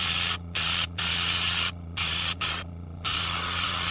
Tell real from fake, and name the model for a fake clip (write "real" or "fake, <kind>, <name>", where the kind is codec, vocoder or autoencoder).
fake, vocoder, Vocos